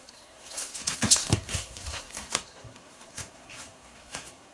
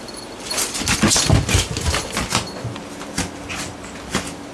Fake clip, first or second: first